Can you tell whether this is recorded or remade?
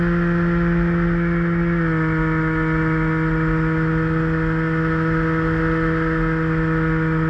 recorded